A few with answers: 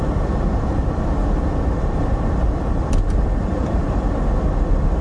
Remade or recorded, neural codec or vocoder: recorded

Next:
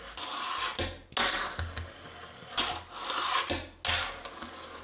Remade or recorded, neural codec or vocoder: recorded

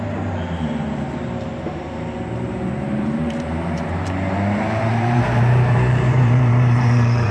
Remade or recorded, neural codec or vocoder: remade, vocoder, BigVGAN v2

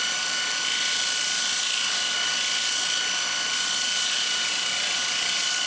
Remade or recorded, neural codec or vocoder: recorded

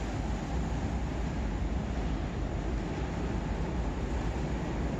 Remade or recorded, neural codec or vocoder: recorded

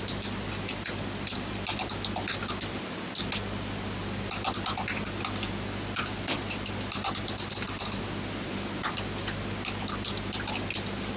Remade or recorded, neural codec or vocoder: recorded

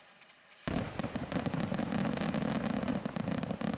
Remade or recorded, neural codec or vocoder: recorded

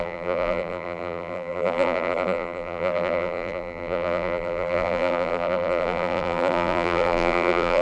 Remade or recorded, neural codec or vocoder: remade, vocoder, BigVGAN v2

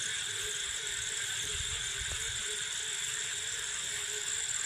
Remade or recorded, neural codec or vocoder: recorded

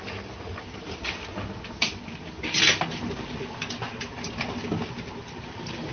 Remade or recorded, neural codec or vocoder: remade, vocoder, BigVGAN v2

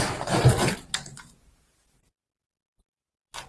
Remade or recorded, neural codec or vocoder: remade, vocoder, BigVGAN v2